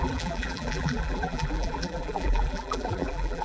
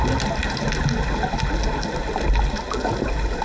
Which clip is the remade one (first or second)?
first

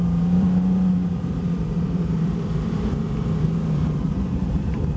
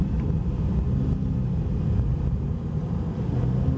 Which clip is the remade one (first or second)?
first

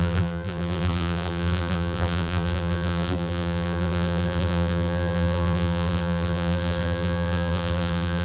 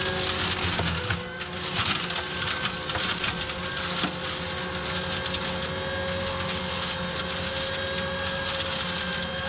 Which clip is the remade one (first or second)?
first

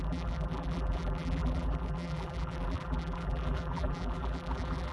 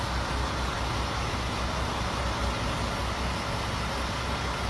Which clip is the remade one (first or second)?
first